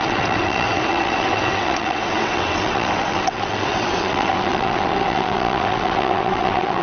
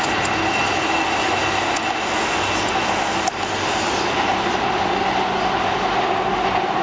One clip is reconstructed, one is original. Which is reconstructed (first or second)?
first